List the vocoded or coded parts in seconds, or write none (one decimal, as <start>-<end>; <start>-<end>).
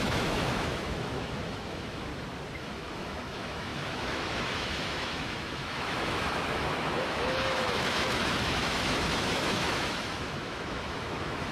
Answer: 0.0-2.1; 2.6-11.5